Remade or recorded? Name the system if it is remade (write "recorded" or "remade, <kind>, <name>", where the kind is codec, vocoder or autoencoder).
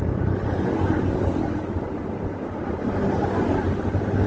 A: recorded